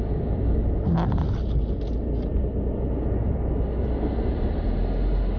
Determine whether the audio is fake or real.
real